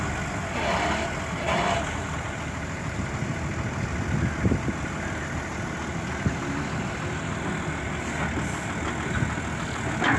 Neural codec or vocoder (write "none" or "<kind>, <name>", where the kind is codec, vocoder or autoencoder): none